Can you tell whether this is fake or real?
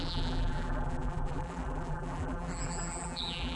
fake